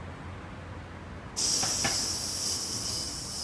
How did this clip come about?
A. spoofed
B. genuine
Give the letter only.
B